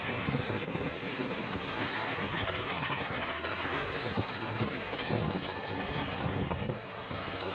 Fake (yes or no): yes